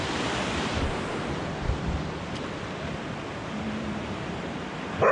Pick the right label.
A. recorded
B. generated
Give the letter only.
B